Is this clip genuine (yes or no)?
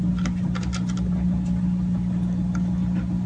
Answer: yes